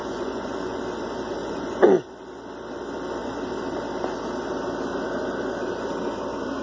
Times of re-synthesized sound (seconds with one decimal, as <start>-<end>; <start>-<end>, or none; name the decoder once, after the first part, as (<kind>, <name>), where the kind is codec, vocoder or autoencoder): 0.0-0.8 (vocoder, Vocos); 1.4-1.9